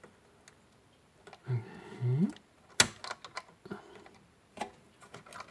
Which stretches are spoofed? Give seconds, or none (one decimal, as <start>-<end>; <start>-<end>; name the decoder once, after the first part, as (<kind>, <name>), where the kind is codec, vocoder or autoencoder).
none